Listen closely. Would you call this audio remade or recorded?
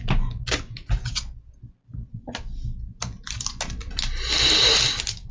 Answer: recorded